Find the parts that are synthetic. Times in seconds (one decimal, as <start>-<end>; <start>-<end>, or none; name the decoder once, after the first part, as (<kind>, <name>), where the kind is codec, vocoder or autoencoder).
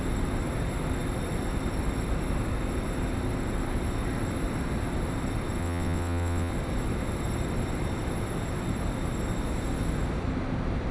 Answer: 5.6-6.5 (vocoder, WaveNeXt)